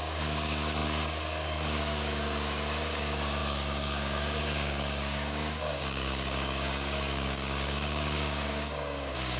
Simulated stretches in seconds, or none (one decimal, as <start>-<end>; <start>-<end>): 0.0-9.4